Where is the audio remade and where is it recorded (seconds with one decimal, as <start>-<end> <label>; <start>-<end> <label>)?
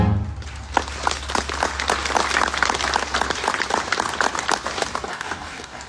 0.0-5.1 recorded; 5.1-5.9 remade